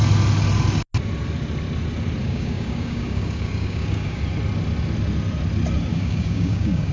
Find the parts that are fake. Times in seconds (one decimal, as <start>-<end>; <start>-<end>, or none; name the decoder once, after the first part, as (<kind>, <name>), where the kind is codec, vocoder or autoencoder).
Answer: 2.2-4.2 (codec, DAC); 5.9-6.9

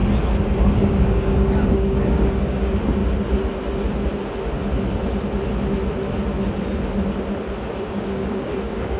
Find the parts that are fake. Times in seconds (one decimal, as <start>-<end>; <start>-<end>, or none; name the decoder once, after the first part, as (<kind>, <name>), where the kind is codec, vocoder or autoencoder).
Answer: 0.6-3.0 (codec, DAC); 7.9-9.0

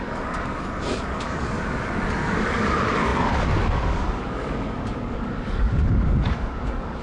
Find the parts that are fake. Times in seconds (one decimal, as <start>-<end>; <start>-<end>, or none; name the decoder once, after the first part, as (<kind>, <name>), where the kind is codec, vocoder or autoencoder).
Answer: 0.0-7.0 (codec, DAC)

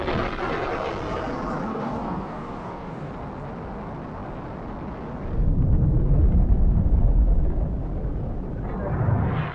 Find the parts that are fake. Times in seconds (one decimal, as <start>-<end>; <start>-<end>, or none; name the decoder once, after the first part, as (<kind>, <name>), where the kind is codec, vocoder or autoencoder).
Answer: 1.7-3.1 (codec, DAC)

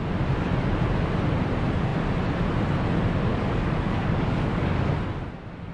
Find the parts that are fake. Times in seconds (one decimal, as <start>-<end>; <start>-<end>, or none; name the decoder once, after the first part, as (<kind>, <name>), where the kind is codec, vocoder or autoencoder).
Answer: 3.3-4.9 (codec, DAC)